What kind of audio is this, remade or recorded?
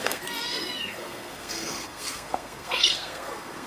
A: remade